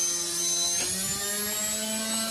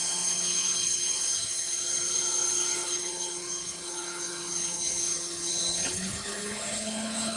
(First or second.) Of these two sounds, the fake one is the second